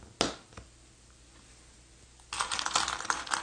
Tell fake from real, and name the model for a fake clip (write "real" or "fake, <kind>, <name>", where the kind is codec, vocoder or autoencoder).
real